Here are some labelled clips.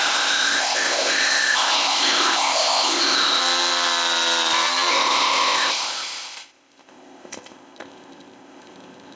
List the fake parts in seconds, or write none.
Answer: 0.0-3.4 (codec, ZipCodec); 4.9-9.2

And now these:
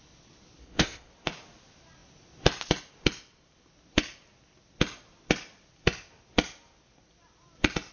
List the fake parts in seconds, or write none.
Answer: 0.6-1.1 (codec, ZipCodec)

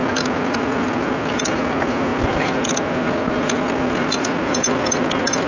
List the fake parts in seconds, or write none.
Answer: none

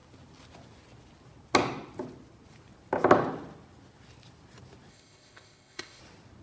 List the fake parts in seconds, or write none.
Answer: 4.9-6.0 (codec, ZipCodec)

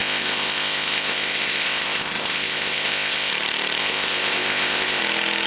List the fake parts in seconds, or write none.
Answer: 0.0-3.3 (codec, ZipCodec); 3.8-5.0